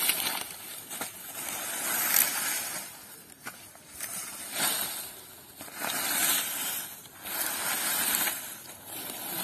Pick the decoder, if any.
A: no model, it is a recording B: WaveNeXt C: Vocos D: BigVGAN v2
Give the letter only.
A